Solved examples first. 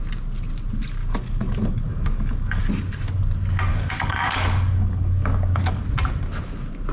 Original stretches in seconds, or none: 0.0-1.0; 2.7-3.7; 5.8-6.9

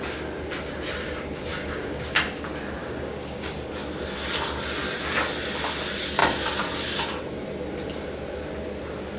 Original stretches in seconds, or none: 0.0-1.5; 2.2-2.8; 3.5-9.2

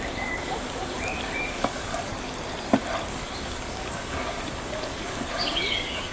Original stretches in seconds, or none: 2.1-3.1

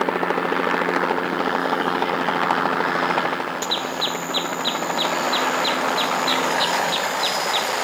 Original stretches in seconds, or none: 0.0-1.6; 2.1-6.3; 7.2-7.8

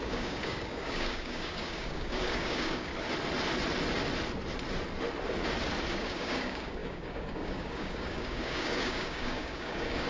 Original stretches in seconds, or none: 2.9-5.9

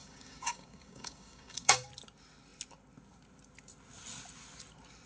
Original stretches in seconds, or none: 1.9-5.1

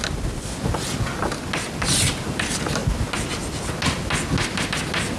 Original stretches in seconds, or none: 0.0-5.2